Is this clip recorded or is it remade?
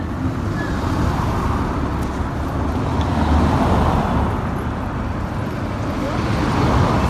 recorded